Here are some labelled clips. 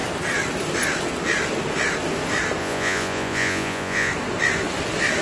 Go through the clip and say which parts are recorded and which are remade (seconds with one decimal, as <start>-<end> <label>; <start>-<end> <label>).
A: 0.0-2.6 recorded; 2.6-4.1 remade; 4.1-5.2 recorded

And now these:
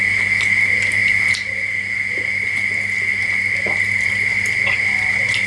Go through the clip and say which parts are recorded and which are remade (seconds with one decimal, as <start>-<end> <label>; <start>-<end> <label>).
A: 0.0-5.5 recorded

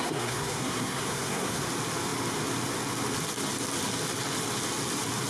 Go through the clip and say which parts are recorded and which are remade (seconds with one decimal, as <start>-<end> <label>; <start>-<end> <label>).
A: 0.0-1.7 remade; 1.7-5.3 recorded